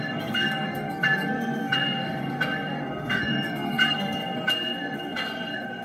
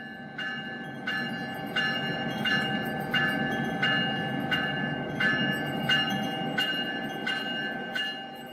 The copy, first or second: first